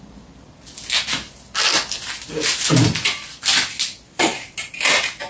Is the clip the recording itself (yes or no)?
yes